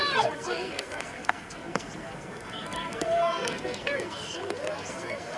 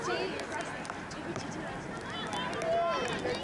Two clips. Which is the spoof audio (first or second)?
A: first